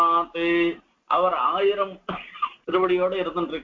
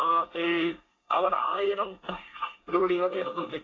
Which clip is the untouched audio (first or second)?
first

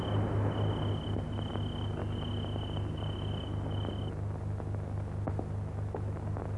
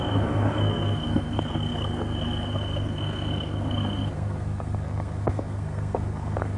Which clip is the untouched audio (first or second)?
first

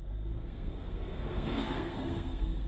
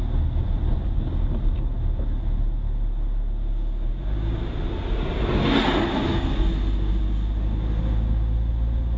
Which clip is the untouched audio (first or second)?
second